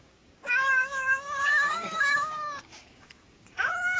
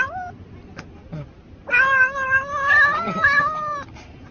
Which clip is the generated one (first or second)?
first